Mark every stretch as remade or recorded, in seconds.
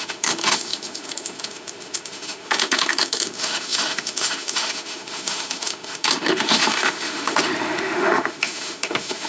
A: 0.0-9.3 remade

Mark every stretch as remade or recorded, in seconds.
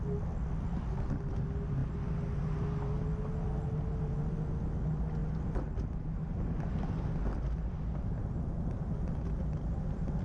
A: 0.0-10.2 recorded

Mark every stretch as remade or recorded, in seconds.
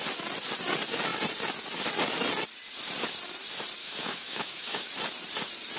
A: 0.0-3.8 recorded; 3.8-4.9 remade; 4.9-5.8 recorded